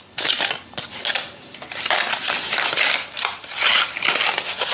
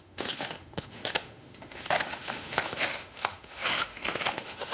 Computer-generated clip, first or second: second